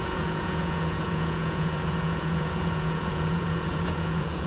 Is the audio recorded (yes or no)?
no